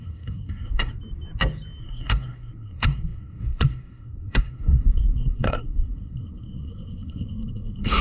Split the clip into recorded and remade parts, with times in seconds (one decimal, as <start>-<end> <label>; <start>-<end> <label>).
0.0-0.9 remade; 0.9-1.8 recorded; 1.8-8.0 remade